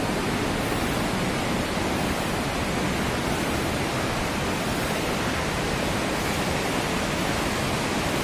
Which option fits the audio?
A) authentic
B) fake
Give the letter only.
A